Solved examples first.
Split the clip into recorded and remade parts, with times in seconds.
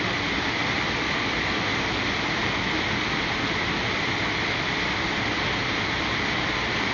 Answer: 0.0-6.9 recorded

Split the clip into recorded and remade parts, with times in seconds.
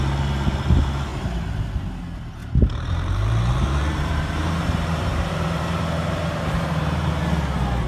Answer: 0.0-2.4 recorded; 2.4-7.1 remade; 7.1-7.9 recorded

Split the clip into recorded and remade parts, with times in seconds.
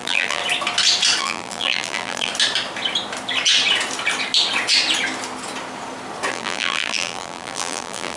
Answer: 0.0-0.4 remade; 0.4-1.2 recorded; 1.2-2.3 remade; 2.3-6.3 recorded; 6.3-8.2 remade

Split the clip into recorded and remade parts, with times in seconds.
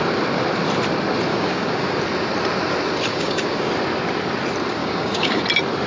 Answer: 0.0-1.3 recorded; 1.3-2.0 remade; 2.0-3.1 recorded; 3.1-3.7 remade; 3.7-4.8 recorded; 4.8-5.4 remade; 5.4-5.9 recorded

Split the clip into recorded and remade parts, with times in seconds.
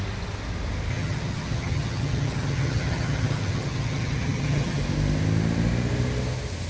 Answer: 0.0-0.9 recorded; 0.9-4.8 remade; 4.8-6.7 recorded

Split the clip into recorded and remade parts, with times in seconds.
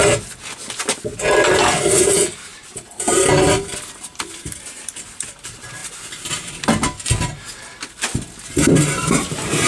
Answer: 0.0-1.8 recorded; 1.8-5.8 remade; 5.8-8.7 recorded; 8.7-9.7 remade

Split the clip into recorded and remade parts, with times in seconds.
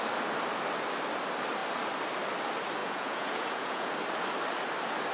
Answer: 0.0-2.8 recorded; 2.8-3.9 remade; 3.9-5.1 recorded